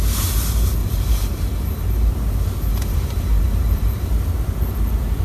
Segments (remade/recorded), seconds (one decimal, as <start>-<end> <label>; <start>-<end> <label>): 0.0-0.8 recorded; 0.8-2.1 remade; 2.1-2.7 recorded; 2.7-4.1 remade; 4.1-5.2 recorded